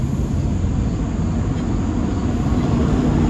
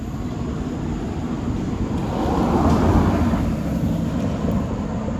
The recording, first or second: first